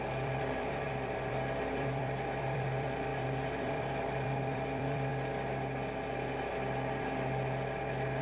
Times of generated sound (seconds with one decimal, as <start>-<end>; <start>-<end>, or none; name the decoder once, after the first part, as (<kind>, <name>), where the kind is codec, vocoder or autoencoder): 0.0-5.1 (vocoder, BigVGAN v2)